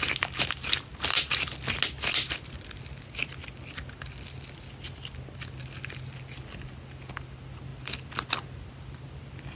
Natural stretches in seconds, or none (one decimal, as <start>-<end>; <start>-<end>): 0.0-9.6